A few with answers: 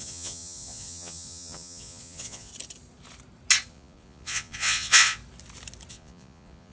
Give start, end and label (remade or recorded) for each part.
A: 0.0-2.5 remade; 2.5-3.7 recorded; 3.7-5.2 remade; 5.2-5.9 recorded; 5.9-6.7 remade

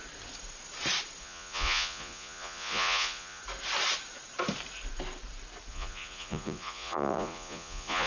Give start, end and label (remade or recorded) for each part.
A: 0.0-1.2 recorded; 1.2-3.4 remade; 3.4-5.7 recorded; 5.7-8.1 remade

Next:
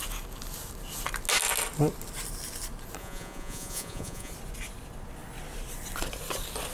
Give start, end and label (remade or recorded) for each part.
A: 0.0-3.0 recorded; 3.0-4.3 remade; 4.3-6.7 recorded

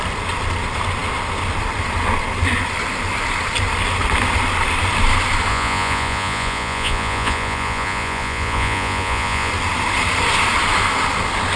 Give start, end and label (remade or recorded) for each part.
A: 0.0-5.5 recorded; 5.5-9.5 remade; 9.5-11.6 recorded